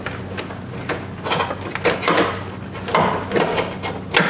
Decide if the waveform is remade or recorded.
recorded